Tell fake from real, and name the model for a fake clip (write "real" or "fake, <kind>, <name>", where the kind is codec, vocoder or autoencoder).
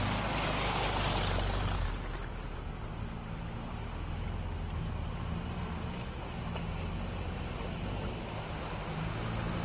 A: real